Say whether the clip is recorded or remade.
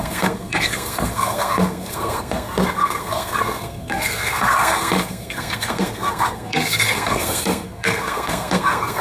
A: remade